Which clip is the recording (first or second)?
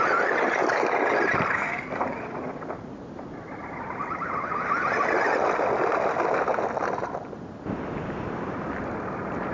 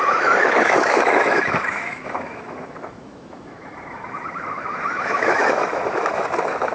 first